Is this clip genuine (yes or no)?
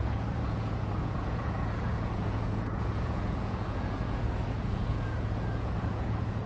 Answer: no